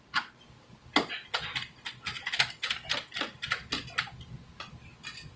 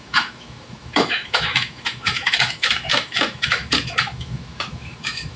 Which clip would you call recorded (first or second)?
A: first